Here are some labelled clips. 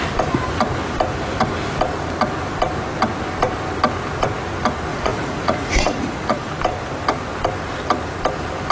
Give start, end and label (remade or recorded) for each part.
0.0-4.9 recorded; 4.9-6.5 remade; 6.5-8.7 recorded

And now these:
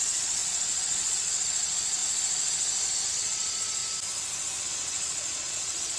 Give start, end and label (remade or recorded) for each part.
0.0-2.0 remade; 2.0-3.1 recorded; 3.1-3.8 remade; 3.8-4.6 recorded; 4.6-6.0 remade

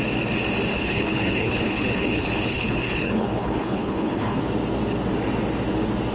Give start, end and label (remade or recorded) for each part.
0.0-0.7 recorded; 0.7-4.4 remade; 4.4-6.1 recorded

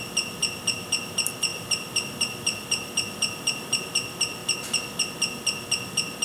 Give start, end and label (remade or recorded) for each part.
0.0-1.5 recorded; 1.5-3.9 remade; 3.9-6.2 recorded

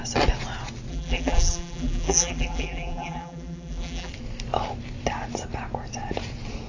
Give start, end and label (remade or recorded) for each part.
0.0-0.9 recorded; 0.9-4.1 remade; 4.1-6.7 recorded

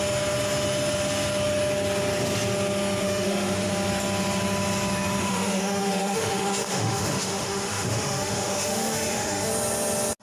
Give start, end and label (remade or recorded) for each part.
0.0-3.0 recorded; 3.0-3.7 remade; 3.7-5.2 recorded; 5.2-9.5 remade; 9.5-10.2 recorded

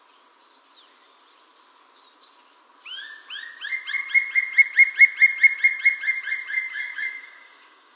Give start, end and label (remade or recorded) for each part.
0.0-6.7 recorded; 6.7-8.0 remade